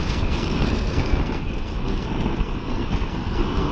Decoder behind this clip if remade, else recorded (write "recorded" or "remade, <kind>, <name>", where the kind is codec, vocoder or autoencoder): remade, codec, SNAC